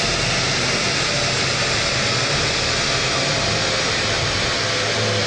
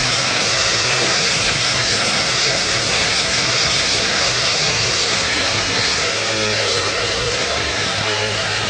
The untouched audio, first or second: first